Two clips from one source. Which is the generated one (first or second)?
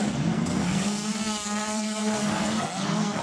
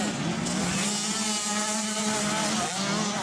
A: first